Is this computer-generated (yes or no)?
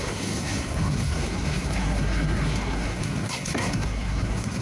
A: yes